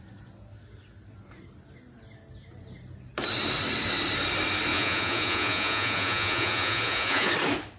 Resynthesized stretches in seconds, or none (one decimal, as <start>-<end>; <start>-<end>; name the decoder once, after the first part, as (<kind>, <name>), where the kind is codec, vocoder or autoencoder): 4.7-7.3 (vocoder, Vocos)